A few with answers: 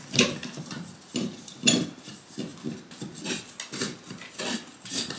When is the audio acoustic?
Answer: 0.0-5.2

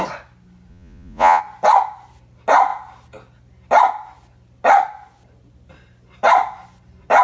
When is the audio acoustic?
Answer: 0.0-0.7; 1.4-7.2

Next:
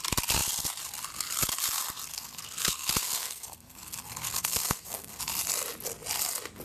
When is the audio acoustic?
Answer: 0.0-2.1; 5.2-6.6

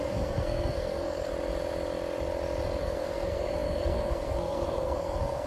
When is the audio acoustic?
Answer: 1.3-2.8